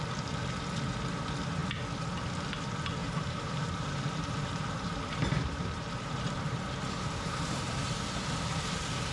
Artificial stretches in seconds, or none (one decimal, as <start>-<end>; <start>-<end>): 3.0-7.6